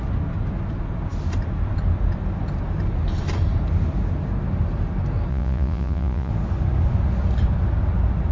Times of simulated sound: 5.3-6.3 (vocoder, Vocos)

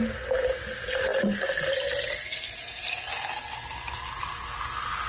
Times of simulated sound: none

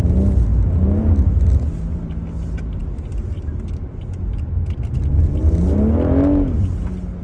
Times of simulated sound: none

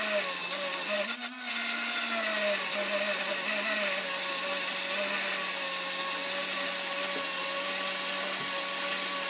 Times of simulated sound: none